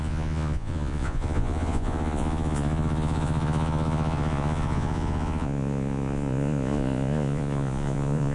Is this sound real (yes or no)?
no